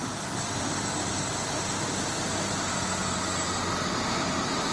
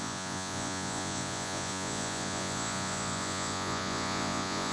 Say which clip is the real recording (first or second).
first